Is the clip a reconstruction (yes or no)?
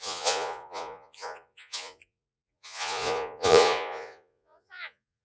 yes